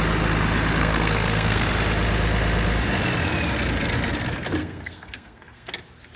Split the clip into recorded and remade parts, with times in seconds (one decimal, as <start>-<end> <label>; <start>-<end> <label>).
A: 0.0-0.8 recorded; 0.8-1.7 remade; 1.7-4.6 recorded; 4.6-5.7 remade; 5.7-6.2 recorded